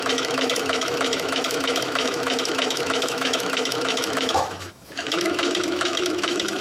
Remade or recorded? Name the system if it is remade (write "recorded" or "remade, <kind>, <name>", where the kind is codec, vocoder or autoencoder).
remade, autoencoder, DAC-VAE